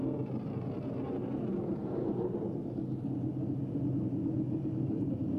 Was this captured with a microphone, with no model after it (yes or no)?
yes